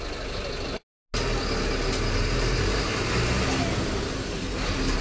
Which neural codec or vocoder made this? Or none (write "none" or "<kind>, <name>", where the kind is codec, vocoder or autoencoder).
none